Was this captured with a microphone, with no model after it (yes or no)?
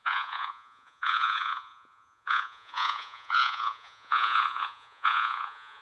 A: no